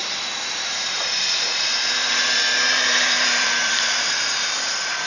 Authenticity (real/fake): fake